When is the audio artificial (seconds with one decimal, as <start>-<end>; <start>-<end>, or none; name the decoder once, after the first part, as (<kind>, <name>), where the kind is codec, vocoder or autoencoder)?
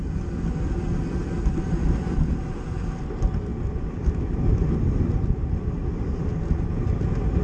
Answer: none